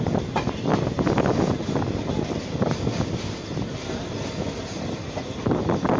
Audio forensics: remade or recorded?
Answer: recorded